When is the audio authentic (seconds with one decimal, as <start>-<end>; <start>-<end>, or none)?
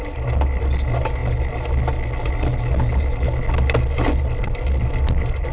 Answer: 0.0-5.5